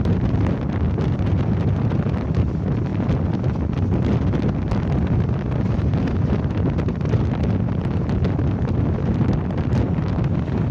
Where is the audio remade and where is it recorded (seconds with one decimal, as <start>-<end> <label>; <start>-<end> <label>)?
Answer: 0.0-10.7 recorded